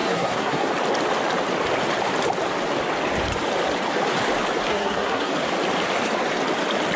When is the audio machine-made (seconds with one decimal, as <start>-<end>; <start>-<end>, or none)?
0.0-0.7; 4.7-5.3